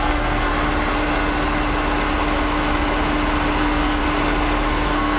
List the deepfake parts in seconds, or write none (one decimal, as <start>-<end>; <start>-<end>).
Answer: 0.0-0.5; 3.6-4.0; 4.7-5.2

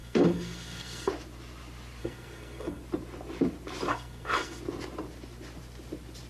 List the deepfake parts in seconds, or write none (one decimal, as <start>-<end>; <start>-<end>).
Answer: 0.0-1.1; 2.0-2.8; 3.9-4.6

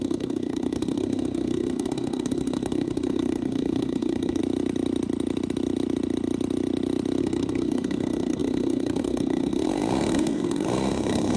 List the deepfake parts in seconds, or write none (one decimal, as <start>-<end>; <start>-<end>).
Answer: 0.0-4.4; 7.2-11.4

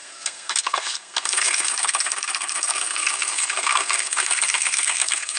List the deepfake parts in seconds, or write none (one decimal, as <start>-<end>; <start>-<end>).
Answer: 0.0-5.4

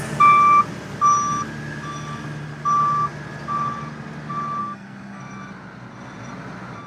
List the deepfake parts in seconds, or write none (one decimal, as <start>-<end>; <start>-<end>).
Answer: 4.6-5.2

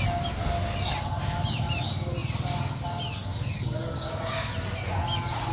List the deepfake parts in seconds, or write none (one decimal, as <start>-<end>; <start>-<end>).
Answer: none

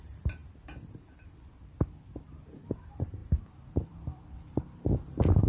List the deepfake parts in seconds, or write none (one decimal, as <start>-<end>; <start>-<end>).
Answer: none

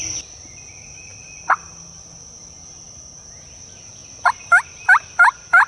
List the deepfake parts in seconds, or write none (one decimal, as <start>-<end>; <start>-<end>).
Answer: none